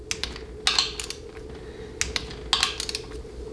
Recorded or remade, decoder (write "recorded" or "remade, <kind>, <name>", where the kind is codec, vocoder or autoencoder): recorded